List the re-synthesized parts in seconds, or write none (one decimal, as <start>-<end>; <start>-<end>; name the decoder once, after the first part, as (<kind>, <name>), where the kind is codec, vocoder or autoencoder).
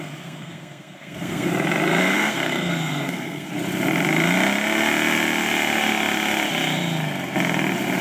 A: 0.0-1.5 (codec, SNAC); 2.0-3.5